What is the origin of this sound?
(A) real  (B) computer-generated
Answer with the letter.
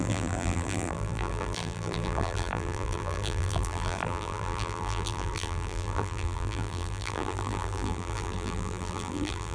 B